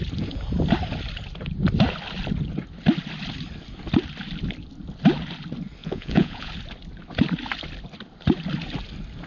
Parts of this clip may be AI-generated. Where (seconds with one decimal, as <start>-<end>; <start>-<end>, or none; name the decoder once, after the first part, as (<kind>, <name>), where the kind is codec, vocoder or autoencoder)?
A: 5.8-6.5 (vocoder, Vocos)